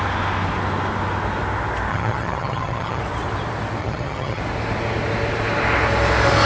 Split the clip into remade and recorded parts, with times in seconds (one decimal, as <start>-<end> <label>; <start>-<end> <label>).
0.0-1.9 recorded; 1.9-3.0 remade; 3.0-3.8 recorded; 3.8-4.4 remade; 4.4-6.5 recorded